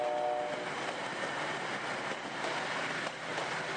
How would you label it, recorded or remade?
recorded